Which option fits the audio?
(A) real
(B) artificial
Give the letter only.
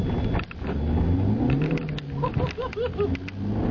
A